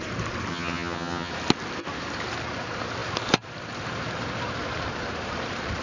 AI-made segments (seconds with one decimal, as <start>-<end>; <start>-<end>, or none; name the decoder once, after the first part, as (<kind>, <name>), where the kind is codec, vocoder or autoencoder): 0.5-1.3 (vocoder, HiFi-GAN)